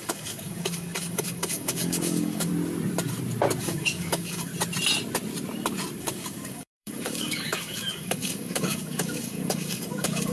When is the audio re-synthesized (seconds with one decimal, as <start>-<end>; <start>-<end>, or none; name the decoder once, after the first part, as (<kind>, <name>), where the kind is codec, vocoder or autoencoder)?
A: 0.0-2.5 (codec, DAC); 3.6-4.5; 6.0-10.3